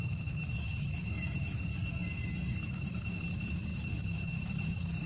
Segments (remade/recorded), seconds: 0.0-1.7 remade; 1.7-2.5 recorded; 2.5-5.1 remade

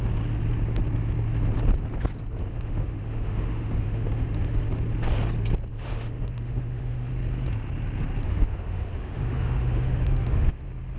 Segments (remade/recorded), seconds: 0.0-2.4 recorded; 2.4-4.7 remade; 4.7-5.7 recorded; 5.7-7.1 remade; 7.1-8.2 recorded; 8.2-10.6 remade; 10.6-11.0 recorded

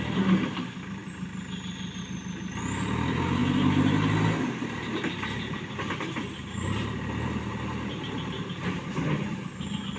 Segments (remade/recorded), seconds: 0.0-10.0 recorded

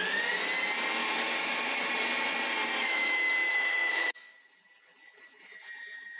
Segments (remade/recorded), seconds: 0.0-1.0 recorded; 1.0-1.9 remade; 1.9-2.8 recorded; 2.8-4.3 remade; 4.3-6.2 recorded